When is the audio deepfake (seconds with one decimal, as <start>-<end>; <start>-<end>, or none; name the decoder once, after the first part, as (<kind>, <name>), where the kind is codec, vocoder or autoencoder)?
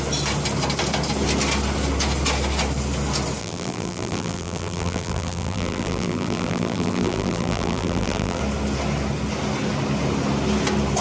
3.4-8.4 (vocoder, BigVGAN v2)